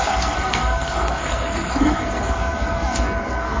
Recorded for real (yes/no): no